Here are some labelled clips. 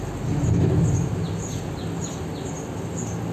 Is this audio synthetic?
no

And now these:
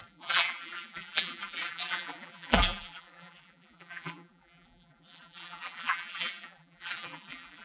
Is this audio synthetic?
yes